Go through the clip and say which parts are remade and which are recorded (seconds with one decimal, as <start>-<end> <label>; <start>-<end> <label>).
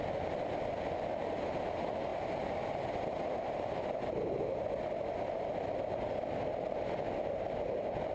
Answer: 0.0-8.1 recorded